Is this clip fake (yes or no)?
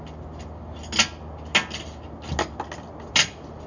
no